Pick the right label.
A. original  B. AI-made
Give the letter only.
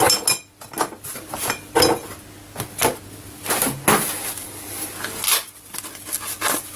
A